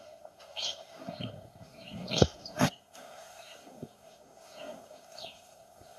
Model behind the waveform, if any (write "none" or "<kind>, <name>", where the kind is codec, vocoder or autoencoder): codec, SNAC